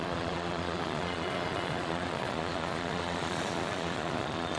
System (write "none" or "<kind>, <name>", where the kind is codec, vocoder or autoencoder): vocoder, Vocos